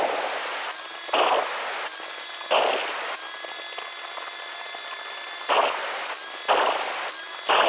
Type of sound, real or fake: real